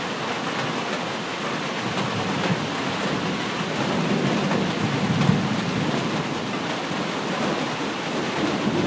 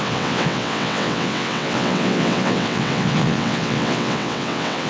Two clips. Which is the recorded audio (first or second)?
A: first